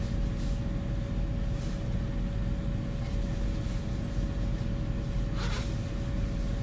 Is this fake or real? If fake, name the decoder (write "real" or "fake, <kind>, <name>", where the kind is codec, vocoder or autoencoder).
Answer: real